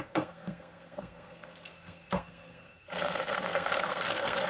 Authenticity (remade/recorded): remade